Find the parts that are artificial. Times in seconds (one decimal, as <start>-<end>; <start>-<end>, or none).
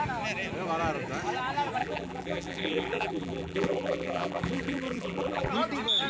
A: 1.8-5.5